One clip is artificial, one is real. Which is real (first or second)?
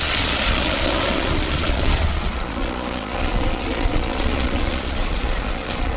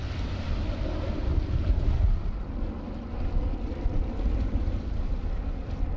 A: second